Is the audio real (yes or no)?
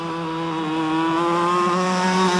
yes